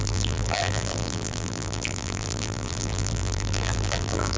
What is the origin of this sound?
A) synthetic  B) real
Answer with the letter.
A